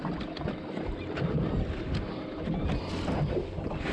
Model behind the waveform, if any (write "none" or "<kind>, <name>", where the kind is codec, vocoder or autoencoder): none